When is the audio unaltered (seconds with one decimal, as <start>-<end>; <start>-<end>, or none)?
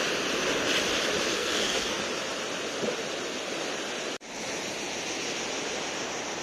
0.0-1.3; 2.0-6.4